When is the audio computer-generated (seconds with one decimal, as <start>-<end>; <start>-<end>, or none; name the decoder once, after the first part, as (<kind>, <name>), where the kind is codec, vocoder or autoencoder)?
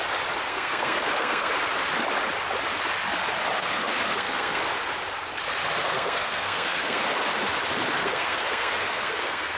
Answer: 0.5-1.5 (codec, SNAC); 3.6-4.6; 5.9-7.0; 8.0-9.6